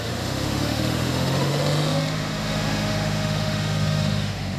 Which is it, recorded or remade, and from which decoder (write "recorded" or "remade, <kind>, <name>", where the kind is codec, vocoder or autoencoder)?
remade, autoencoder, DAC-VAE